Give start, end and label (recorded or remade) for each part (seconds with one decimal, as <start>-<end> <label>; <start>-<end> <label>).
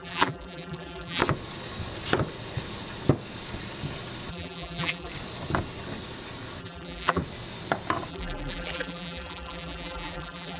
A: 0.0-1.2 remade; 1.2-4.3 recorded; 4.3-5.1 remade; 5.1-6.6 recorded; 6.6-7.2 remade; 7.2-8.1 recorded; 8.1-10.6 remade